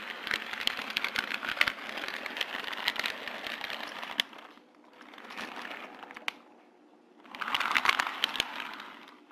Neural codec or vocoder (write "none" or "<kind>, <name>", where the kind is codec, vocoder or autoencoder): none